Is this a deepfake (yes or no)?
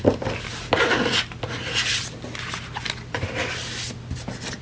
no